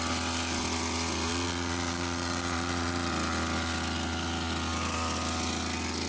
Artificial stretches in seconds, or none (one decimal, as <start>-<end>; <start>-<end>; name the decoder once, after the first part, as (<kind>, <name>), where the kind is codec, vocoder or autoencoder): 1.3-3.1 (vocoder, Vocos)